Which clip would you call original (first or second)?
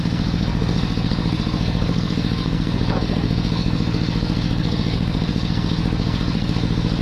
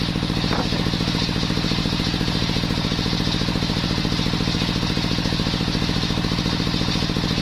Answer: second